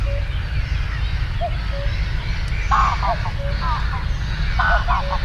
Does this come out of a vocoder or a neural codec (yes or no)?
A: no